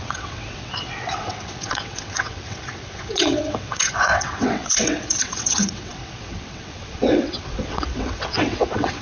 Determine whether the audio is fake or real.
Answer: fake